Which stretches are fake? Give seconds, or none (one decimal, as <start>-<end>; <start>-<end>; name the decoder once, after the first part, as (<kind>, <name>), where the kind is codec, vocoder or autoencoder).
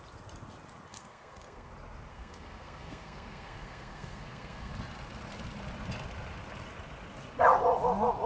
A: 0.9-1.7 (codec, SNAC); 2.1-4.7